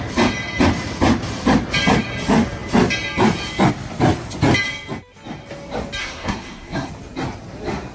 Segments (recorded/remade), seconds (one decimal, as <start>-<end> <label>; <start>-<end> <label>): 0.0-6.0 recorded; 6.0-6.9 remade; 6.9-7.9 recorded